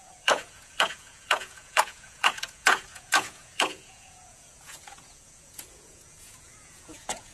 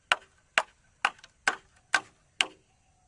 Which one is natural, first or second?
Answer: second